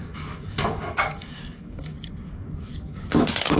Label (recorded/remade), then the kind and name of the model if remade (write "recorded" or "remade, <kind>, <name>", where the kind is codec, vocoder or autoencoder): remade, codec, DAC